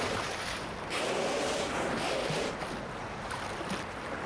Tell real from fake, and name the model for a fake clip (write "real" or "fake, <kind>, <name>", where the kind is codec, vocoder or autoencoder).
real